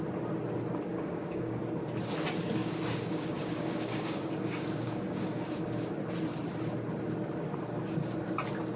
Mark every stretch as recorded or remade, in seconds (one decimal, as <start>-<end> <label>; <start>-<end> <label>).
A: 0.0-0.9 recorded; 0.9-1.6 remade; 1.6-2.6 recorded; 2.6-5.9 remade; 5.9-8.8 recorded